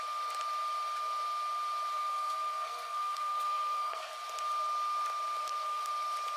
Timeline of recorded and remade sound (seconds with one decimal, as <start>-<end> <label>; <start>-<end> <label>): 0.0-1.9 recorded; 1.9-4.1 remade; 4.1-5.4 recorded; 5.4-5.9 remade; 5.9-6.4 recorded